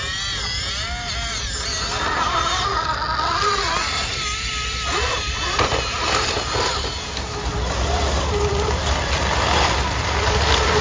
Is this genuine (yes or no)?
yes